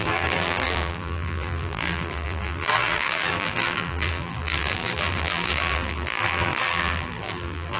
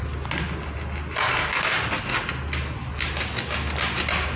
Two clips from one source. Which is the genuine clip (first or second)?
second